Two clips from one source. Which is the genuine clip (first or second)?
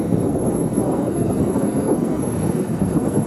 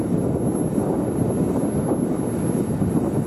second